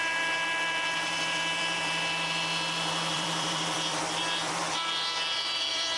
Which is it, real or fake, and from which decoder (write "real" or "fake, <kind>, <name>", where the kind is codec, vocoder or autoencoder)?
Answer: fake, vocoder, BigVGAN v2